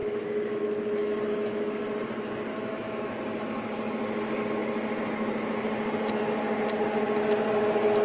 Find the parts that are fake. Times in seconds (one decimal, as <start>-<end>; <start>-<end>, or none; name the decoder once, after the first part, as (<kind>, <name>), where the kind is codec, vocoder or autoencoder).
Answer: 0.0-0.6 (autoencoder, DAC-VAE); 1.0-1.7; 2.5-3.1